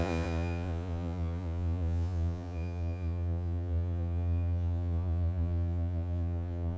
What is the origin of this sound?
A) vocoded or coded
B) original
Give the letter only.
A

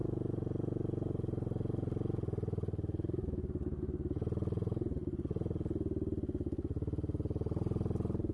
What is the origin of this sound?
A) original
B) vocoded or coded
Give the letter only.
A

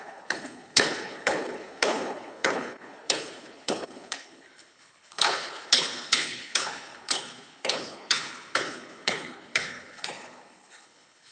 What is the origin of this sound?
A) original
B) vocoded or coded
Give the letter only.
B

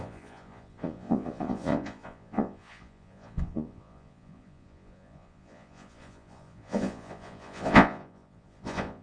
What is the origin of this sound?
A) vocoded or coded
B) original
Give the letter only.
A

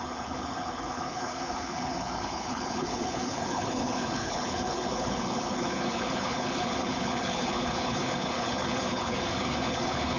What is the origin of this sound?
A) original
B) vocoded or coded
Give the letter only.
B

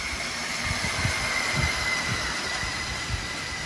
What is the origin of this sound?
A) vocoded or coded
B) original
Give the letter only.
B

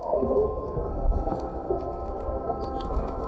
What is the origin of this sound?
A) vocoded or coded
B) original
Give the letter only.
A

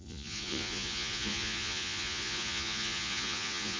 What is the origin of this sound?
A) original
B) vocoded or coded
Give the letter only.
B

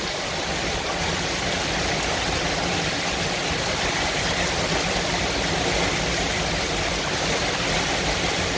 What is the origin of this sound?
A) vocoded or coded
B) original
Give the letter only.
B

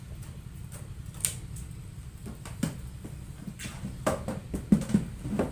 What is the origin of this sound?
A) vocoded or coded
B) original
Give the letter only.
B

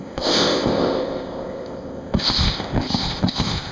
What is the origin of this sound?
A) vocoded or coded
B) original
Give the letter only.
A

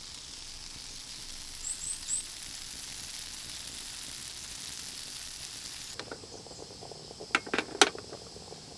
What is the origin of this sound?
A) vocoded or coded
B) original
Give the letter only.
B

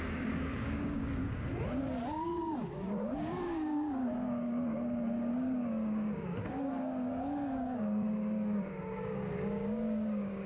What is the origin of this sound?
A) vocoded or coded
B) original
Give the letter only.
A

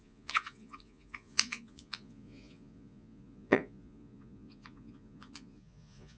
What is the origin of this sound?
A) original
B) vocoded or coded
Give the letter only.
B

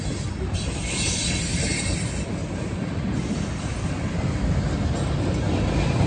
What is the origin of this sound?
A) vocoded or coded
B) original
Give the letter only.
B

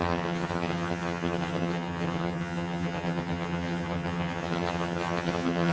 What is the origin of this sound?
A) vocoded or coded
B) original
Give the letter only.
A